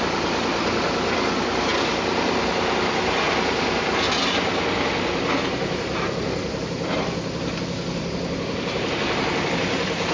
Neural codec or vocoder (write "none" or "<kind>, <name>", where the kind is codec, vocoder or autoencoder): none